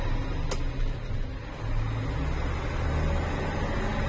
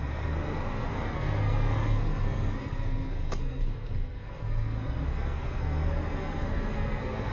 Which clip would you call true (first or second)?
first